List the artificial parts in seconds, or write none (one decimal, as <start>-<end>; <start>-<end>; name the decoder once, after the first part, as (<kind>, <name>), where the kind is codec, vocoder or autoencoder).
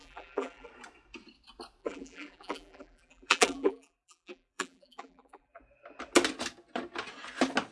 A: 0.0-0.7 (vocoder, BigVGAN v2); 1.8-5.6